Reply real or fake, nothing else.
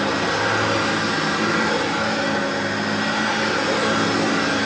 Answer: real